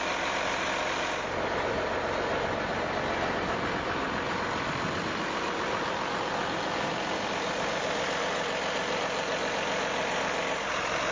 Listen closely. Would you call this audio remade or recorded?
recorded